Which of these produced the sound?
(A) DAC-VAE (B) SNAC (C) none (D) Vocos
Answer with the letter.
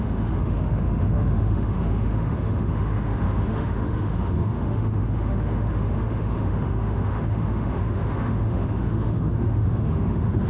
A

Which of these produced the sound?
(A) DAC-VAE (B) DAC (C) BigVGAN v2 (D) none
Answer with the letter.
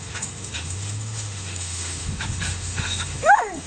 A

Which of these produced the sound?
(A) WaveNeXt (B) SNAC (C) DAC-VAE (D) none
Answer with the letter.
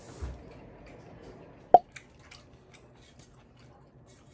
D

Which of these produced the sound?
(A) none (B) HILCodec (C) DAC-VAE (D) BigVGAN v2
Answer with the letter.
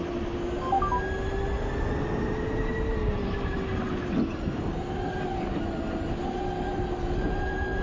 A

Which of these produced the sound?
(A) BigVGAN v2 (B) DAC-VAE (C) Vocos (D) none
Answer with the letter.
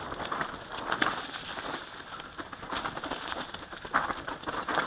D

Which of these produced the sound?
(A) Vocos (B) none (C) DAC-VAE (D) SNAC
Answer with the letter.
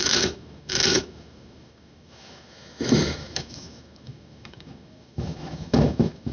C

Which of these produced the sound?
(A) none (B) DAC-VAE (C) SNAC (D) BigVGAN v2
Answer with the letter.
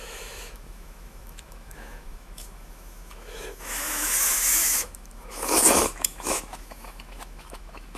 B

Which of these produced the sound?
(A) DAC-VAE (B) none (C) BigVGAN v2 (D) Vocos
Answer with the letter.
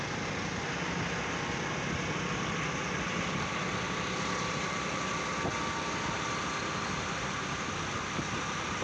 B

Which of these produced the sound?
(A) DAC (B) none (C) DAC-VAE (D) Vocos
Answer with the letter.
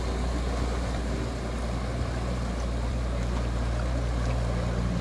B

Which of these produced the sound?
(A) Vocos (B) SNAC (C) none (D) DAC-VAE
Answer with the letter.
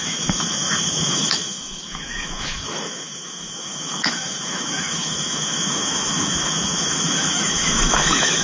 D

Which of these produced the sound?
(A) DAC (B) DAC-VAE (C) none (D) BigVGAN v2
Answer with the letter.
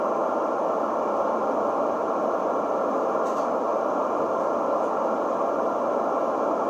C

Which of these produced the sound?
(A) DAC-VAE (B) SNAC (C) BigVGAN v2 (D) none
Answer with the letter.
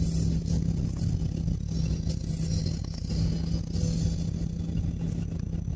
D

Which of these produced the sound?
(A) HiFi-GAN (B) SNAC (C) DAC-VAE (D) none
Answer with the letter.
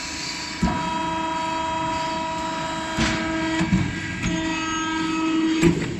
D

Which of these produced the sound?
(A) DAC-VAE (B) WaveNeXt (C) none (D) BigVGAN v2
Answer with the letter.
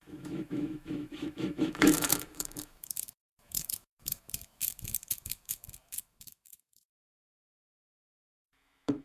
A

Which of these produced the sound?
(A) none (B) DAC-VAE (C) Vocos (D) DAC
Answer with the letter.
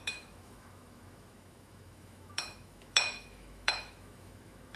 B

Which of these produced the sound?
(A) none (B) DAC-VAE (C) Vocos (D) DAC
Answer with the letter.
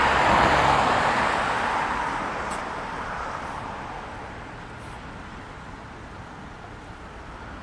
A